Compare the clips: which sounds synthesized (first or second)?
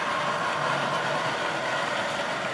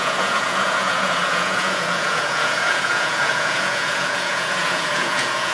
second